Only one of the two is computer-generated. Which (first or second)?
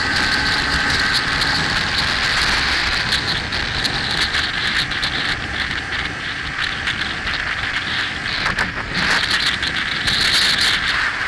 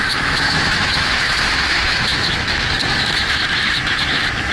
second